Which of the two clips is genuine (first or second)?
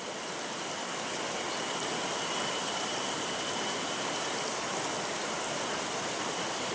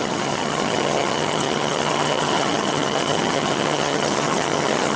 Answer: first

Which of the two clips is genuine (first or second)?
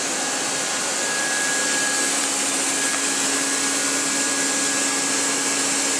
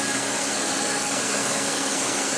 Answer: first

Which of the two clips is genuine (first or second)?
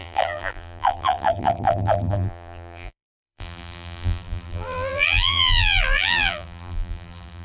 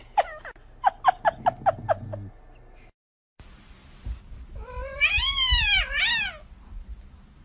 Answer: second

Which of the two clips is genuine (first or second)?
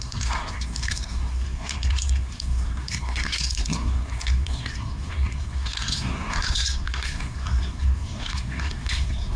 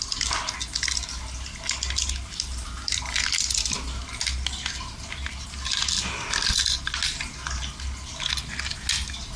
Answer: second